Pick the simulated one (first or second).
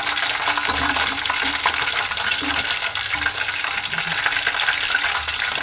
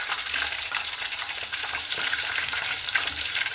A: second